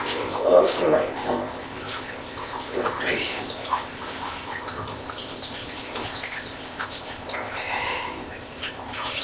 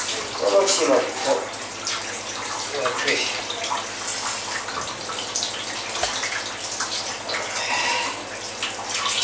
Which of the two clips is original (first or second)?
second